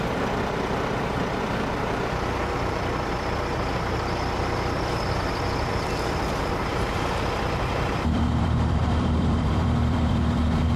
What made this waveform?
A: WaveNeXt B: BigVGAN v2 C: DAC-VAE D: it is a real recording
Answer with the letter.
B